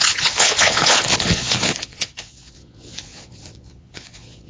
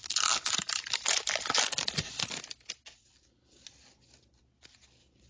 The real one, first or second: second